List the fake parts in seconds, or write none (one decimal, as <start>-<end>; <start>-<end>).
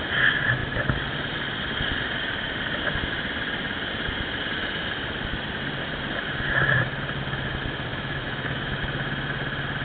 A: 7.9-8.8